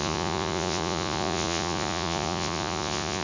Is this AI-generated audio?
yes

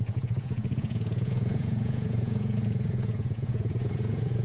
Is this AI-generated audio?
yes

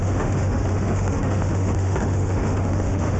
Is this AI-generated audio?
yes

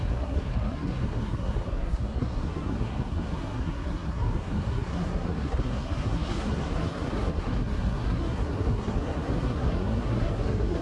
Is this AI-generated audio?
yes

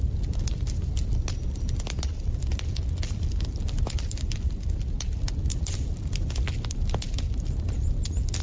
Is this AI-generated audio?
no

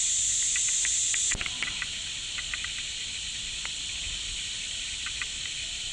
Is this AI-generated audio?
no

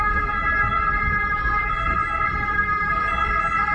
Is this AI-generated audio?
yes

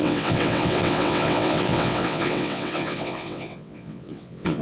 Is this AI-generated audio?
yes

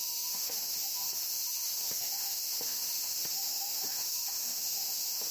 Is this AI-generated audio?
yes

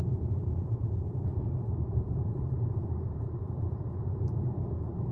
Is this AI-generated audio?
yes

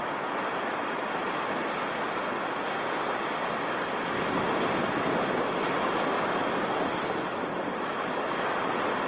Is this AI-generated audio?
no